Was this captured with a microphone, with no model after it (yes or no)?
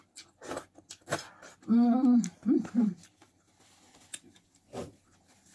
yes